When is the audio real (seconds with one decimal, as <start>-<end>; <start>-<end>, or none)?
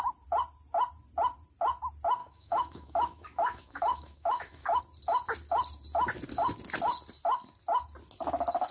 0.0-2.2; 4.8-8.7